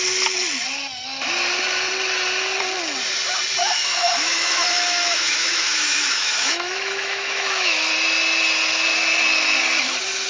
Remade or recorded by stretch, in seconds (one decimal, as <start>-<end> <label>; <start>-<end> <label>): 0.0-3.6 recorded; 3.6-7.9 remade; 7.9-10.3 recorded